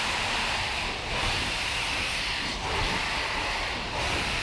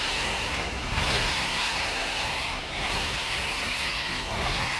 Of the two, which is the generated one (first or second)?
second